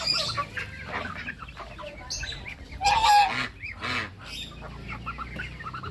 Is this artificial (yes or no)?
no